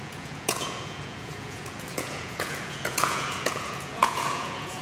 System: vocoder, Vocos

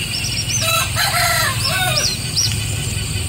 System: none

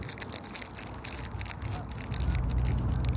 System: none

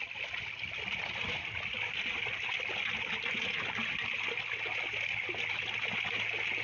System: none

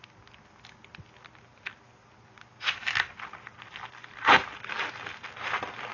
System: none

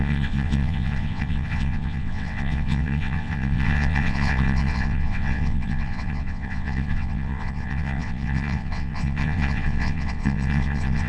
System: vocoder, WaveNeXt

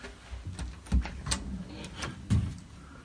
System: none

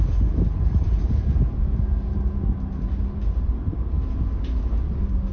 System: none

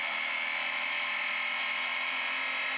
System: none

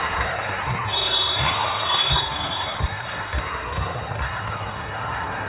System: codec, SNAC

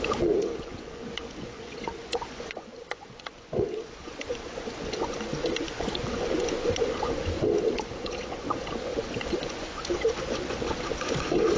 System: vocoder, Vocos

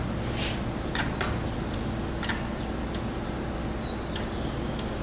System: none